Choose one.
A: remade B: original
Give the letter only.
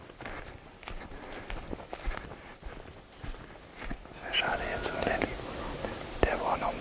B